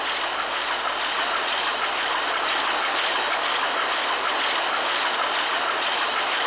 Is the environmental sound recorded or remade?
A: recorded